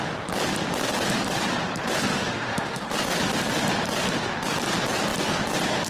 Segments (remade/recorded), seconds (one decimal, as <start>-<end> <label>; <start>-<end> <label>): 0.0-2.1 recorded; 2.1-2.8 remade; 2.8-5.9 recorded